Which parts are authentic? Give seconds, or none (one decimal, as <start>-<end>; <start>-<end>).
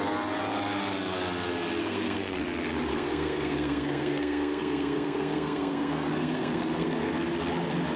0.0-1.8; 2.4-2.9; 7.1-8.0